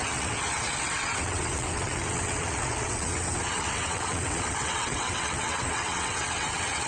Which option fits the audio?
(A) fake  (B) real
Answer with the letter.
A